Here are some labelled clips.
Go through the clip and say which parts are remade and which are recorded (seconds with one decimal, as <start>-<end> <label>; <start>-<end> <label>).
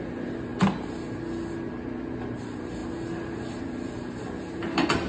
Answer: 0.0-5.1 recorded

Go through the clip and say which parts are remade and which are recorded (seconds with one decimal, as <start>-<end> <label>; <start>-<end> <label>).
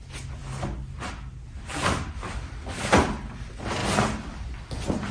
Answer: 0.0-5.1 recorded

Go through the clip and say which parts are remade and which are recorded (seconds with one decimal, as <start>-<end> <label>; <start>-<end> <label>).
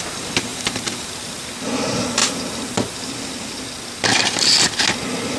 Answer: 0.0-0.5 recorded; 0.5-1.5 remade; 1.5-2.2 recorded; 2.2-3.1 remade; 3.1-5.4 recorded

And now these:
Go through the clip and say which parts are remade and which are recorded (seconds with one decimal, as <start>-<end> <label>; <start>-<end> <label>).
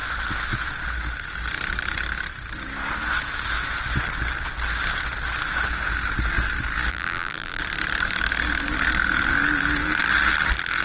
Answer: 0.0-6.9 recorded; 6.9-7.6 remade; 7.6-10.8 recorded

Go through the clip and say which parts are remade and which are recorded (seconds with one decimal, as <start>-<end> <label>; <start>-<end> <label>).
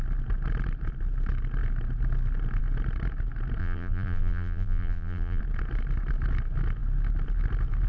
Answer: 0.0-3.6 recorded; 3.6-5.4 remade; 5.4-7.9 recorded